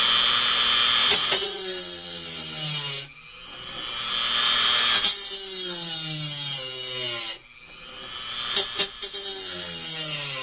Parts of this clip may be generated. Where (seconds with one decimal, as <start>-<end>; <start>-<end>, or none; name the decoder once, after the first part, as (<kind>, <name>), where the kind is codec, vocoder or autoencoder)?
1.0-1.6 (vocoder, Vocos)